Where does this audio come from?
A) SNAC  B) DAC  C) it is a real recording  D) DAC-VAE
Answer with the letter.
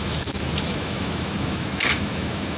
D